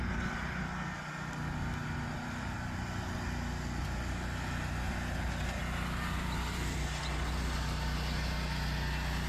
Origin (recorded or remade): recorded